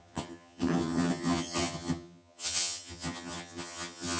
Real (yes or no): no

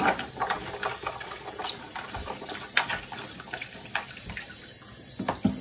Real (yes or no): yes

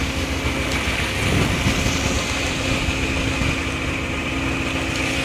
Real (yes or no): yes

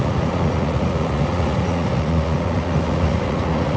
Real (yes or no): no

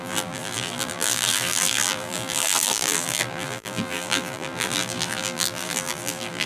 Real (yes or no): no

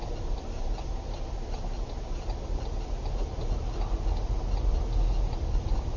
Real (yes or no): yes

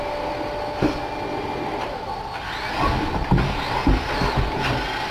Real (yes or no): yes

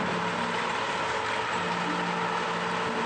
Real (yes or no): yes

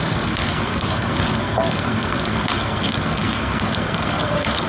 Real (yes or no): no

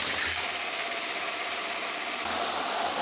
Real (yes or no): yes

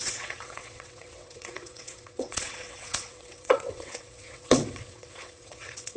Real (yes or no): no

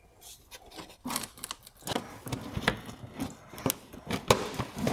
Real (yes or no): yes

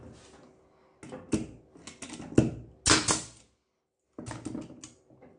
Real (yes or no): yes